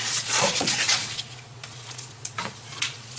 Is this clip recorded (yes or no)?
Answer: no